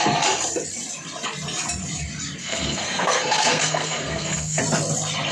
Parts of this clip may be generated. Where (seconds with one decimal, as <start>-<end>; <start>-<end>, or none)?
2.4-4.6